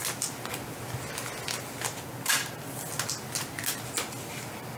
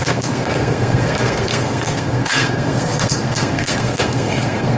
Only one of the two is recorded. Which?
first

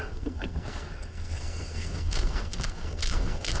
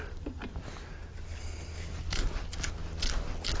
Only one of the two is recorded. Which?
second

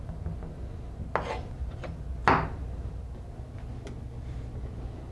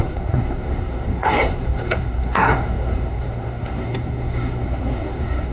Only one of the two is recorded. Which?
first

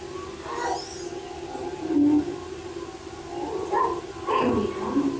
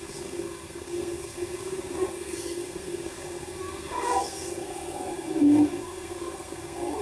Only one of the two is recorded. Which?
first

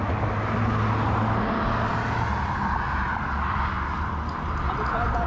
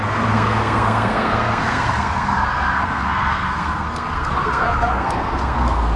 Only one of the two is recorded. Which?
first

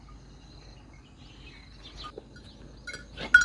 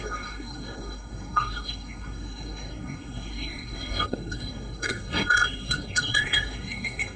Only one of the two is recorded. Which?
first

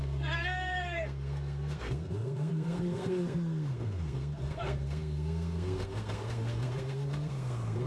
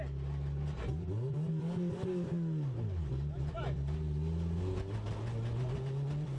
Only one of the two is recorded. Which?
second